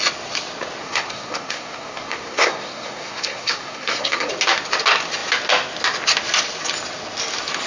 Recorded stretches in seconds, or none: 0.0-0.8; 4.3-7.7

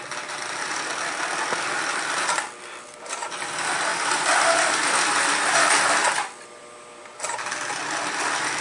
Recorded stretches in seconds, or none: 0.0-6.0; 7.0-8.6